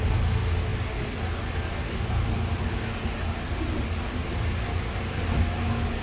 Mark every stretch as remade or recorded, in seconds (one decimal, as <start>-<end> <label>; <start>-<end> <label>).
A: 0.0-6.0 recorded